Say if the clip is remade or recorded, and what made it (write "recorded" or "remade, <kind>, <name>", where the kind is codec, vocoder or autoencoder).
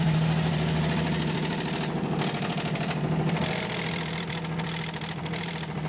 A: remade, vocoder, BigVGAN v2